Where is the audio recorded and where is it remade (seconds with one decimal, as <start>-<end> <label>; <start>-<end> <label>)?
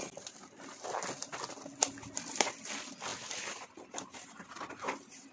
0.0-5.3 recorded